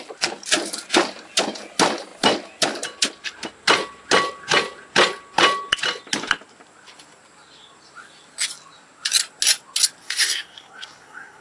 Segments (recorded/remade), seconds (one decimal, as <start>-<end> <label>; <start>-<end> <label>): 0.0-10.0 recorded; 10.0-11.4 remade